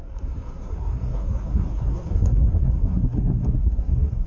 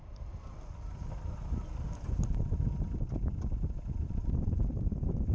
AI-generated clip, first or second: first